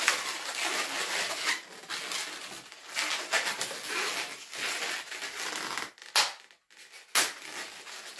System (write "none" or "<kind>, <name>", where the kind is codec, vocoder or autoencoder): none